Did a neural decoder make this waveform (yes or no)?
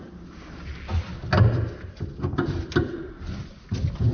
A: no